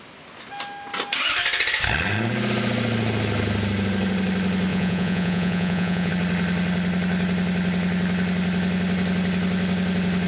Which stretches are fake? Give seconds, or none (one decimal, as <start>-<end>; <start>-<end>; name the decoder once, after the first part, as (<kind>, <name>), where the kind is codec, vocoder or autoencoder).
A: 4.7-6.1 (vocoder, Vocos)